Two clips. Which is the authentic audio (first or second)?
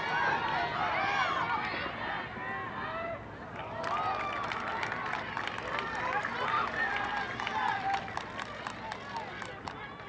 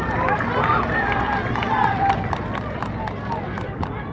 first